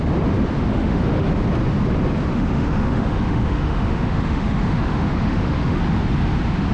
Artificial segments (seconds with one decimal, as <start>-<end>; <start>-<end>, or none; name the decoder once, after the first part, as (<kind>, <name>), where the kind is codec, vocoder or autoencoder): 0.7-1.3 (autoencoder, DAC-VAE); 2.3-5.8